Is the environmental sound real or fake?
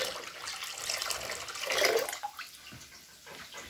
real